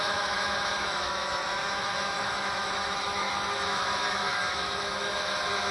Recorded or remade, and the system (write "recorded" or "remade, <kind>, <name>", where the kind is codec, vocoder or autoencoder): remade, autoencoder, DAC-VAE